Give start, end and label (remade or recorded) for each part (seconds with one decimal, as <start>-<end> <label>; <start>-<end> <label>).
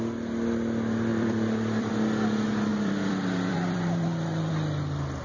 0.0-1.1 recorded; 1.1-1.9 remade; 1.9-2.7 recorded; 2.7-4.5 remade; 4.5-5.2 recorded